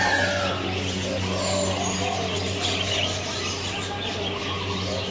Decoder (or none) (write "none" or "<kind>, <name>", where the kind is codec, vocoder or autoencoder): none